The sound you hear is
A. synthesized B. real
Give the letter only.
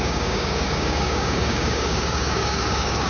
A